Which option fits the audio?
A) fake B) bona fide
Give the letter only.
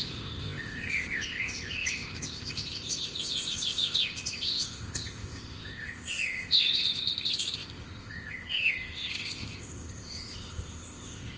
A